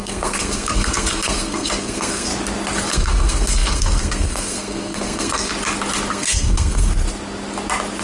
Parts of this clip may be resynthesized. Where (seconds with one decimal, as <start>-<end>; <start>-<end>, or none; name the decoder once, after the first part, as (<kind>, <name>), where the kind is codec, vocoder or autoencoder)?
0.0-2.3 (codec, SNAC); 2.9-5.5; 6.1-6.9

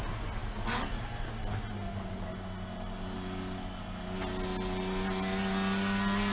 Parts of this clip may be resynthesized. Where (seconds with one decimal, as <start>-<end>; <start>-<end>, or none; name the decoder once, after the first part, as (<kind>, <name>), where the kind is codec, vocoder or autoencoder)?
none

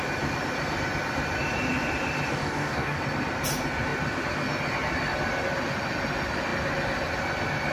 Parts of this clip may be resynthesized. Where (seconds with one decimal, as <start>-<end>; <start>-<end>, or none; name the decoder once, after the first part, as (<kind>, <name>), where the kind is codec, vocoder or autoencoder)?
2.3-3.0 (codec, DAC)

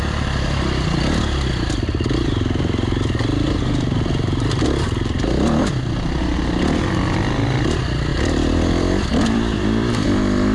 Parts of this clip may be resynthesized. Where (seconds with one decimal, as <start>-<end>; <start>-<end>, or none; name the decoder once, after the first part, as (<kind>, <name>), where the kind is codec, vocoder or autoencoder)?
8.1-9.9 (vocoder, BigVGAN v2)

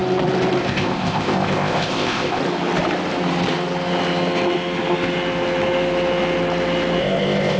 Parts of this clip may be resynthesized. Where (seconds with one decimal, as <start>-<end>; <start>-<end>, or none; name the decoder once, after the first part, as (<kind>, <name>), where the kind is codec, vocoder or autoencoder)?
0.6-2.4 (codec, ZipCodec); 7.0-7.6

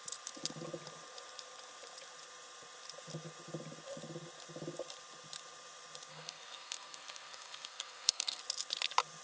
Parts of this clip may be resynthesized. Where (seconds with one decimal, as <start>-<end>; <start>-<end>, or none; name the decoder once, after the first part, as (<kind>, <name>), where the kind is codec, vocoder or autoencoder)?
6.1-8.4 (codec, SNAC)

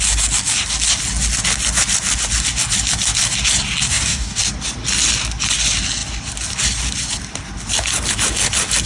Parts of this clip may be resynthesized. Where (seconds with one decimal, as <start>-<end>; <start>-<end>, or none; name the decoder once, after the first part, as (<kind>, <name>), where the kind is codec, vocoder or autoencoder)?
3.9-4.4 (codec, DAC)

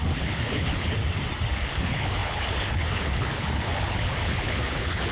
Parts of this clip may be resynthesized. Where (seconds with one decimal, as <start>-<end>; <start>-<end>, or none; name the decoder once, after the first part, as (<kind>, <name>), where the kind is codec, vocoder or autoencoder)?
0.0-1.0 (codec, HILCodec); 1.6-5.1